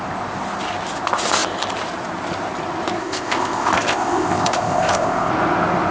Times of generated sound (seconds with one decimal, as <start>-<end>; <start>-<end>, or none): 3.0-5.3